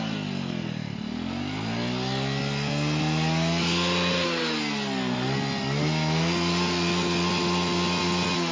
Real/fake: real